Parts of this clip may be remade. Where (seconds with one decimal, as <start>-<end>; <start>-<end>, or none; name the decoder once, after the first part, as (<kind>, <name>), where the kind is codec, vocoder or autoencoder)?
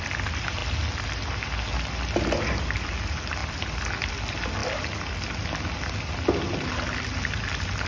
none